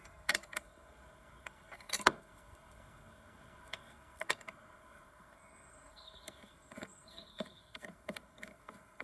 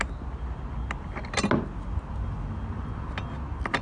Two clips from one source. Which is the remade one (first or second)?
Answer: first